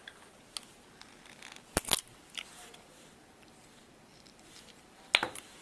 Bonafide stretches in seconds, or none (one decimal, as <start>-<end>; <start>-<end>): 0.0-1.9